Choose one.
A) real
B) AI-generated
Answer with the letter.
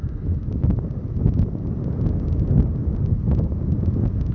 A